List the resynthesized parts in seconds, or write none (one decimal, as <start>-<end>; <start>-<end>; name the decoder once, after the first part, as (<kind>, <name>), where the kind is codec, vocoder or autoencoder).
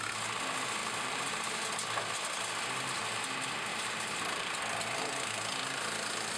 0.8-1.6 (vocoder, BigVGAN v2); 3.7-4.6